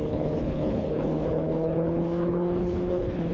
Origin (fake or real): fake